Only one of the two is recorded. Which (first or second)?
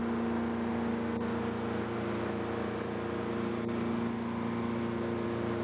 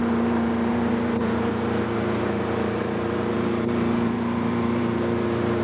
first